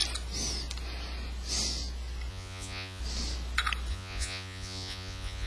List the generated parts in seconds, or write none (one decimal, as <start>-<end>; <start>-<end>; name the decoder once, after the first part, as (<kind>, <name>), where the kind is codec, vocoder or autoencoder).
2.3-3.0 (vocoder, Vocos); 3.9-5.5